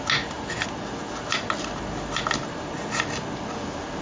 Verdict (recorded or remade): recorded